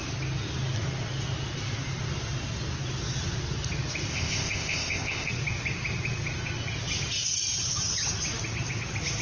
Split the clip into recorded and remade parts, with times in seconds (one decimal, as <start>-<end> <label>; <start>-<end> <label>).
0.0-4.1 recorded; 4.1-5.3 remade; 5.3-9.2 recorded